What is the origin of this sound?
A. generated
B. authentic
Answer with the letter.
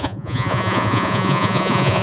A